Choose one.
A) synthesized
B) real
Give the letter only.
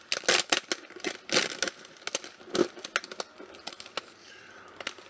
B